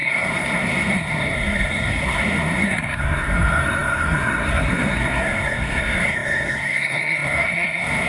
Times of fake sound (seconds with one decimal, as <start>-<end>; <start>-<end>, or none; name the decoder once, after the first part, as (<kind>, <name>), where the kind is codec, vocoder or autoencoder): 0.0-8.1 (codec, SNAC)